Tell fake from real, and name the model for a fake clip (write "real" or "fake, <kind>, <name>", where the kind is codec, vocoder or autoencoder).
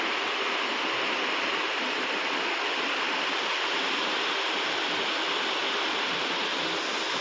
real